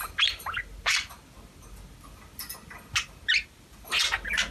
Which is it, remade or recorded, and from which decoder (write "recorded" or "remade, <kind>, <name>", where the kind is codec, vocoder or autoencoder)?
recorded